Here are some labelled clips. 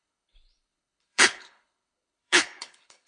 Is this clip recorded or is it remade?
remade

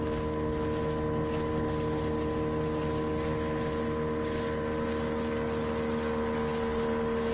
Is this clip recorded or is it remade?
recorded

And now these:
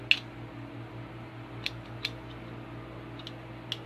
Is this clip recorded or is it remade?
recorded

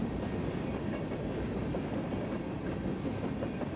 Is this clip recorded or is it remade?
recorded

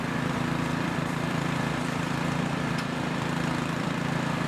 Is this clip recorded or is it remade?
remade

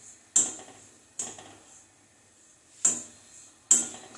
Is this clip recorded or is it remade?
recorded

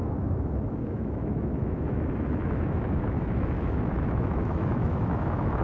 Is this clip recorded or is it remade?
remade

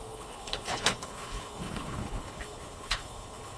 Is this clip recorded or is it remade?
remade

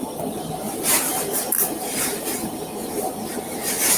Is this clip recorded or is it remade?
remade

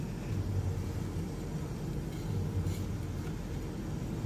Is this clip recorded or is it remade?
recorded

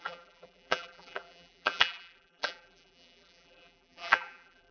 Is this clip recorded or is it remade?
remade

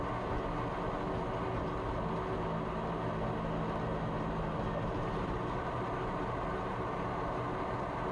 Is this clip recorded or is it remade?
recorded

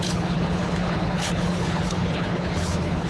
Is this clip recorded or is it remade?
remade